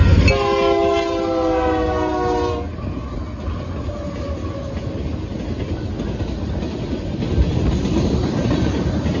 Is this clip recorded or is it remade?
recorded